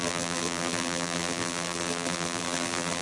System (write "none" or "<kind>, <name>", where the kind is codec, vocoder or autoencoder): vocoder, BigVGAN v2